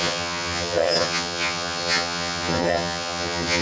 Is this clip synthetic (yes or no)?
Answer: yes